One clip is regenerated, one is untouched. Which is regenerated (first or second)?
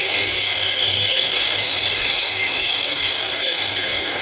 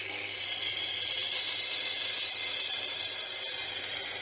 first